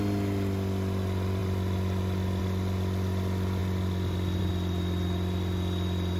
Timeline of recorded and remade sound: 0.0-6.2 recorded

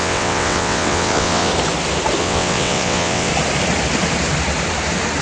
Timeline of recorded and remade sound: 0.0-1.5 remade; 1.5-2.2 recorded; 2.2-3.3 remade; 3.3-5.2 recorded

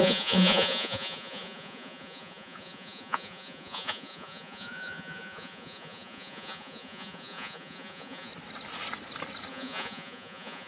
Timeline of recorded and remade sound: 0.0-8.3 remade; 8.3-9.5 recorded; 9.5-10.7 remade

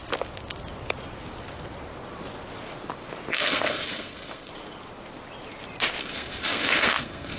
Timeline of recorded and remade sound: 0.0-3.3 recorded; 3.3-4.5 remade; 4.5-6.0 recorded; 6.0-7.4 remade

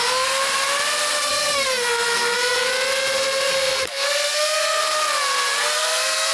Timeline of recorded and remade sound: 0.0-0.4 remade; 0.4-1.3 recorded; 1.3-2.7 remade; 2.7-3.4 recorded; 3.4-4.8 remade; 4.8-5.6 recorded; 5.6-6.3 remade

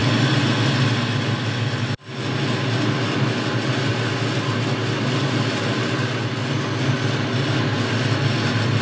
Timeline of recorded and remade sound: 0.0-8.8 recorded

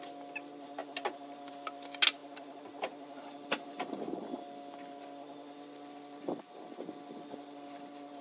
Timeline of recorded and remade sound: 0.0-8.2 recorded